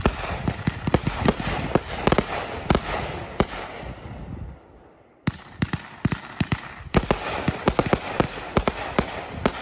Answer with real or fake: real